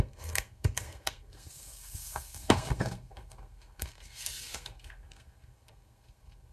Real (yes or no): no